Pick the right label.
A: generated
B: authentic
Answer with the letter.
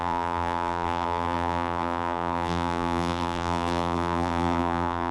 A